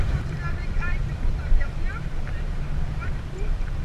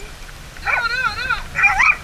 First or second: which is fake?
first